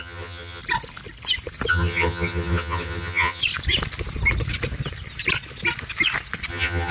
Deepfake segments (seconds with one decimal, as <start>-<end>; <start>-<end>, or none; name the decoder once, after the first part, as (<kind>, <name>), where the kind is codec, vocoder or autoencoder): 0.0-0.6 (vocoder, HiFi-GAN); 1.7-3.4; 6.5-6.9